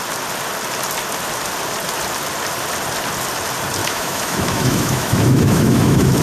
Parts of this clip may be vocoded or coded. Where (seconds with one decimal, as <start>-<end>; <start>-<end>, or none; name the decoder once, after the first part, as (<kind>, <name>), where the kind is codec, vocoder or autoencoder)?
3.8-6.2 (autoencoder, DAC-VAE)